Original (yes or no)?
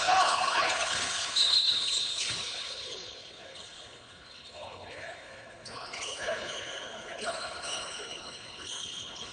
no